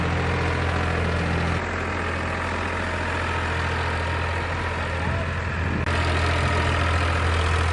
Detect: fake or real real